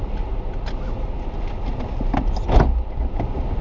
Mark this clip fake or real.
real